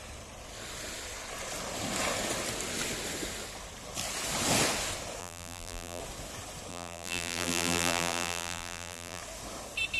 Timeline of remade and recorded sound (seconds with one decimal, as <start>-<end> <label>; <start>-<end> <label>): 0.0-5.2 recorded; 5.2-6.0 remade; 6.0-6.7 recorded; 6.7-9.2 remade; 9.2-10.0 recorded